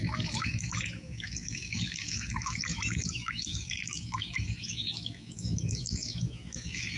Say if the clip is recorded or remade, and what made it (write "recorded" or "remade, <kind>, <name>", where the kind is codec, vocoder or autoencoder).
remade, autoencoder, DAC-VAE